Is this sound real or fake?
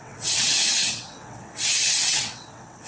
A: fake